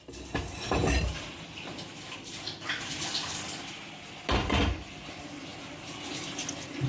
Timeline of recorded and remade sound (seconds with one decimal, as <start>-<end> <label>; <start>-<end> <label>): 0.0-6.9 recorded